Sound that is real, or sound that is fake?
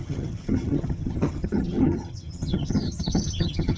fake